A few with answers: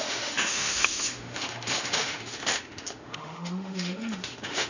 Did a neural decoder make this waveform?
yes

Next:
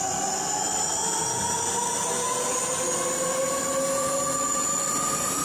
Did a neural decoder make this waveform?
no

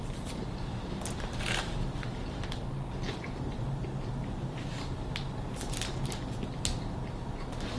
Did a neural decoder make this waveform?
no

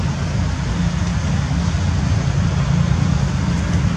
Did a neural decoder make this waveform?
no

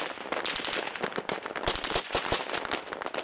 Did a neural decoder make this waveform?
no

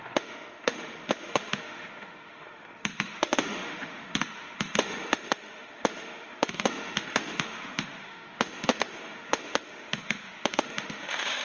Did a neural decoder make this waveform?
yes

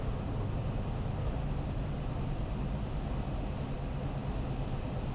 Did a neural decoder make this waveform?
no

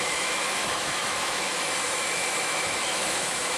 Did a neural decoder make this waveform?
yes